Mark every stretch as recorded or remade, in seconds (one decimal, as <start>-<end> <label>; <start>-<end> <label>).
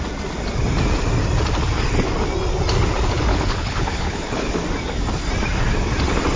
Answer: 0.0-3.3 recorded; 3.3-4.5 remade; 4.5-6.4 recorded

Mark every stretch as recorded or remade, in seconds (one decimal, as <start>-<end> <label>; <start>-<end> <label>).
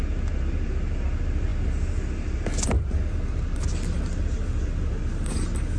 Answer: 0.0-5.8 recorded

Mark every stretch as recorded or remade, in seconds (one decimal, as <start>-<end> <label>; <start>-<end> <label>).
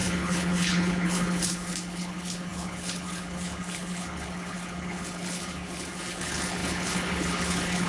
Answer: 0.0-7.9 remade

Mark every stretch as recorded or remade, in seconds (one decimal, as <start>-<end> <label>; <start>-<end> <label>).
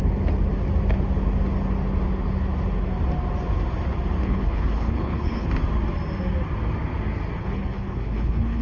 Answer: 0.0-4.2 recorded; 4.2-5.5 remade; 5.5-7.4 recorded; 7.4-8.6 remade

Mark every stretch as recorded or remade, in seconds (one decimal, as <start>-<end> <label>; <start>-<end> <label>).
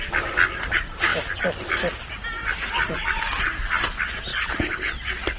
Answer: 0.0-4.3 recorded; 4.3-4.9 remade; 4.9-5.4 recorded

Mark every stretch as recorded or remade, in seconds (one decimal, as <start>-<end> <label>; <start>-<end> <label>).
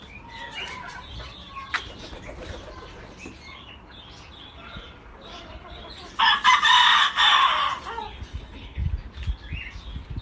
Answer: 0.0-8.3 recorded; 8.3-8.9 remade; 8.9-10.2 recorded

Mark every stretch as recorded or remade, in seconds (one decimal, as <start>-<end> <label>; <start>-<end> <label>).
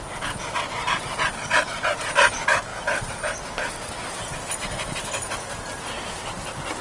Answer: 0.0-6.8 recorded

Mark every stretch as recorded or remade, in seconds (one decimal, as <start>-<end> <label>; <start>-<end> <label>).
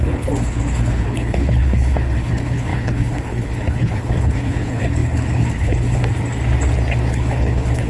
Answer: 0.0-6.0 remade; 6.0-7.1 recorded; 7.1-7.9 remade